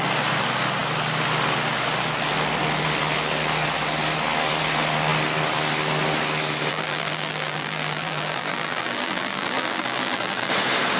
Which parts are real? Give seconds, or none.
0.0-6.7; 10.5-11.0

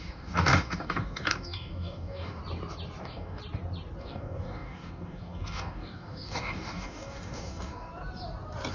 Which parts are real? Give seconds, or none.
2.4-3.0; 3.4-4.0; 7.9-8.7